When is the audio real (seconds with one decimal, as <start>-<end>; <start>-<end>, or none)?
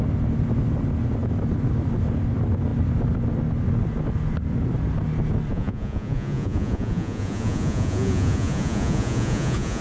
0.0-5.5